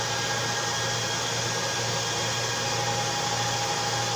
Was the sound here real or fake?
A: real